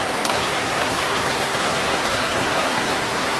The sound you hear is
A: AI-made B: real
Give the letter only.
A